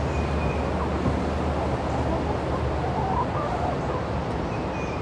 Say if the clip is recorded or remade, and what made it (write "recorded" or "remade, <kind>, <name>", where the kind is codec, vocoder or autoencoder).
recorded